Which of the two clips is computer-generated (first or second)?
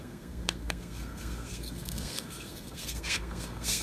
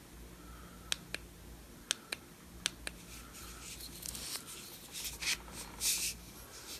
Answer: first